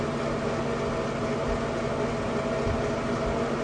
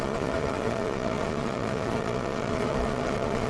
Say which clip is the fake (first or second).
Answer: second